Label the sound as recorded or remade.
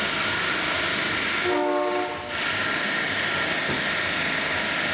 recorded